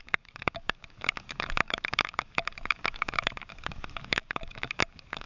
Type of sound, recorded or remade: remade